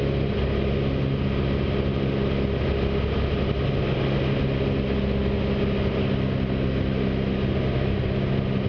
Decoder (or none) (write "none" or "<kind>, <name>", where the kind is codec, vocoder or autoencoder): none